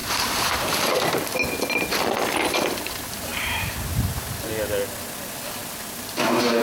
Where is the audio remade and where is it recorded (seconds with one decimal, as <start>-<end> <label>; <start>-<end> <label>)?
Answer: 0.0-0.7 remade; 0.7-3.3 recorded; 3.3-4.5 remade; 4.5-6.6 recorded